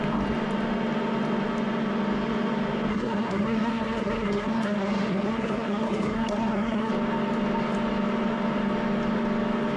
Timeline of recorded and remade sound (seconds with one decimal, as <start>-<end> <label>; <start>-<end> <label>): 0.0-2.9 recorded; 2.9-6.9 remade; 6.9-9.8 recorded